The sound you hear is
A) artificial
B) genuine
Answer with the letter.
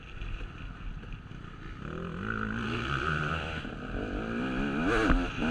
B